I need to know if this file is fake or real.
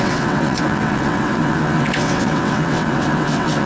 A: fake